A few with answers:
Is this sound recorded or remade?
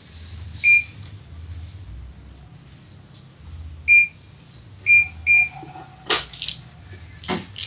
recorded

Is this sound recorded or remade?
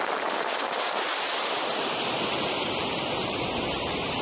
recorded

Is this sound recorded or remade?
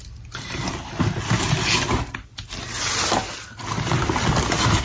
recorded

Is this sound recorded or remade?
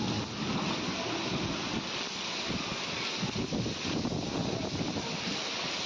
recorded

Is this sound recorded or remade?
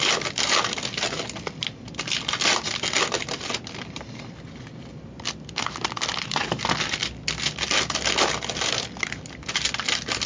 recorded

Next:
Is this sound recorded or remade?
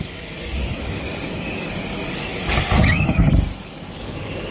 remade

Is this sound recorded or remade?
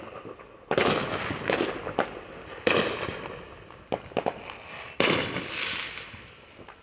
recorded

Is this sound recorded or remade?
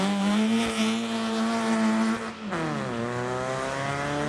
recorded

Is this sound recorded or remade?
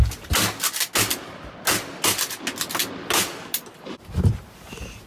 recorded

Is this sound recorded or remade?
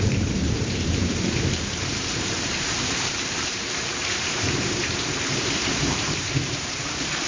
remade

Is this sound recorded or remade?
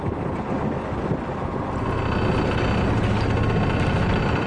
recorded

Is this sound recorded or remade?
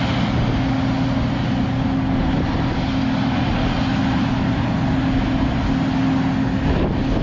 recorded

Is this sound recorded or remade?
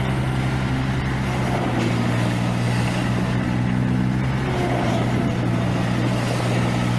recorded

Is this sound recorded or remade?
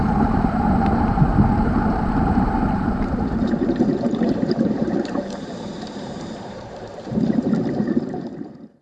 remade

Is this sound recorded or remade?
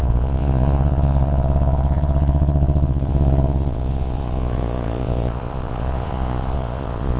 remade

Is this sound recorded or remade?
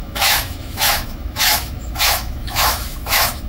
remade